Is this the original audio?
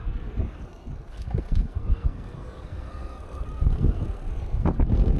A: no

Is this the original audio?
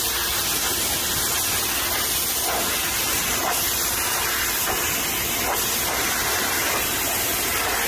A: yes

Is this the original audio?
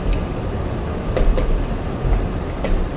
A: yes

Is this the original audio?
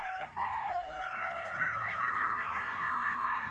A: no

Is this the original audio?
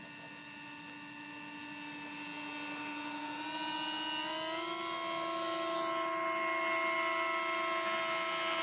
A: yes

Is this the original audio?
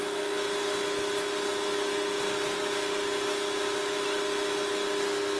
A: yes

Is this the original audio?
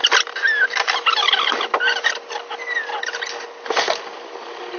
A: yes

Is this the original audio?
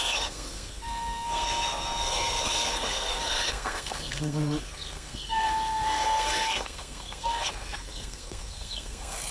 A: no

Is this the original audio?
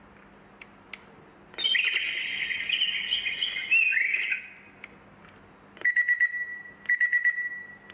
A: yes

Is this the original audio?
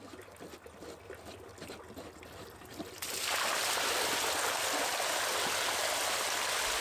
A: yes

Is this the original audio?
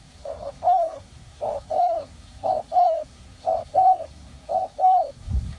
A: no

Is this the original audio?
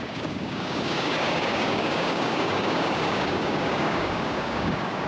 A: no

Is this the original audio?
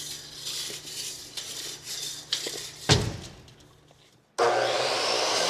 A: yes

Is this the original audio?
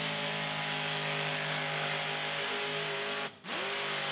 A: yes